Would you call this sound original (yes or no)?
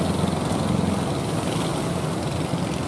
yes